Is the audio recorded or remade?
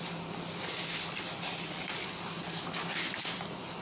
recorded